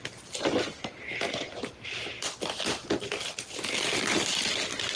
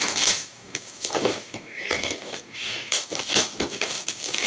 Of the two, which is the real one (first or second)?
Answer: first